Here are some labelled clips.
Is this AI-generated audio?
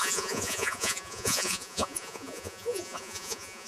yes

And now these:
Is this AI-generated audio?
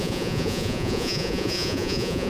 yes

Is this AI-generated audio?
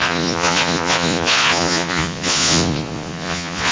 yes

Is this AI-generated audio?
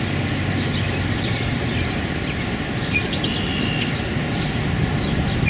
no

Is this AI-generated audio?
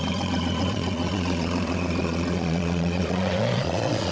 yes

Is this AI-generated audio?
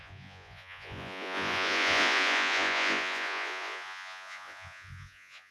yes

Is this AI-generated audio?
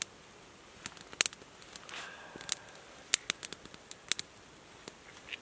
no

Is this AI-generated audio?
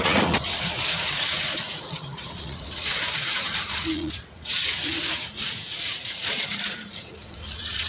yes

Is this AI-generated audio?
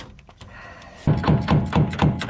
no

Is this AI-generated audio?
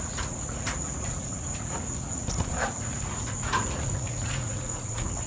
yes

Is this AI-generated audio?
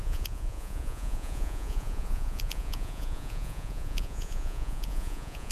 yes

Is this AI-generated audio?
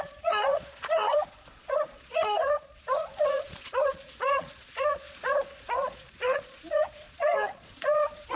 yes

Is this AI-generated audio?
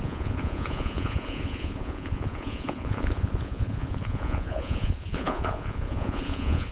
yes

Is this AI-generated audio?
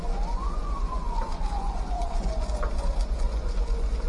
yes